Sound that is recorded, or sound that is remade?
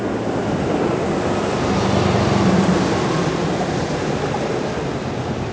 recorded